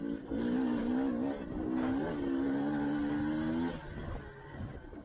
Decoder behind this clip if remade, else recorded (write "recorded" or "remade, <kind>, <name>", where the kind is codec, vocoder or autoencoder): recorded